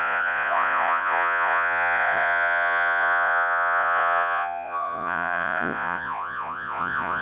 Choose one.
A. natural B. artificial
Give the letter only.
B